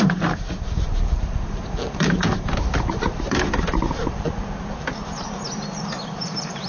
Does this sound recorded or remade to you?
remade